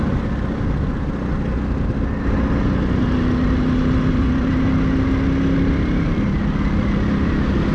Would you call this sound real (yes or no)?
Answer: yes